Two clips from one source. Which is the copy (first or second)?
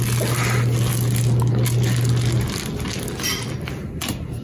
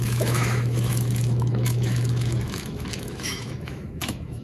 second